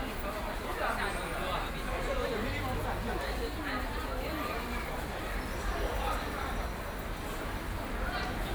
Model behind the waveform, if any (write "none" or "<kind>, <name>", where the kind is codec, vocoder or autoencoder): none